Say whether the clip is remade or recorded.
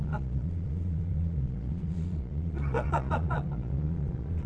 remade